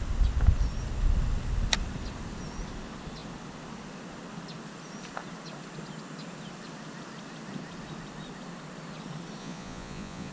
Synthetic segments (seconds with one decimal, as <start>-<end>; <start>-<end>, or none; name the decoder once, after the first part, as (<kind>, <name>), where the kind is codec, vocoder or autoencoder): 9.4-10.3 (vocoder, Vocos)